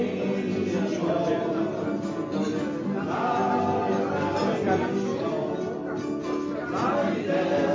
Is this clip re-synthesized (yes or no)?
no